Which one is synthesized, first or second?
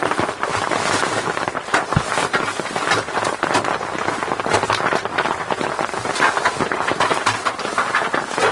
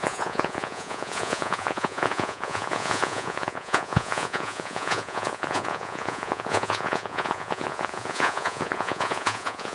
second